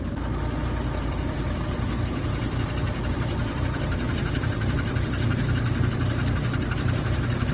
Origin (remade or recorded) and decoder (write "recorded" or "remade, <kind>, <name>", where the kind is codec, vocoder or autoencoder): remade, vocoder, BigVGAN v2